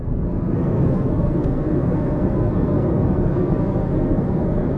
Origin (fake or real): fake